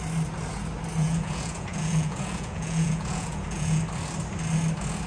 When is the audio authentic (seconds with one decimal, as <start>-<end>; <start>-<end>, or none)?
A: 0.0-1.0; 3.8-5.1